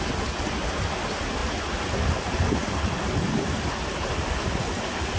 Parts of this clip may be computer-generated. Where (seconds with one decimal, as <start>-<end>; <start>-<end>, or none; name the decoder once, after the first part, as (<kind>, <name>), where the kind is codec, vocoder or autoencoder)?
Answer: none